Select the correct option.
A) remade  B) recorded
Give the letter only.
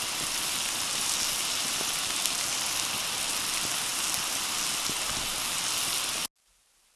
B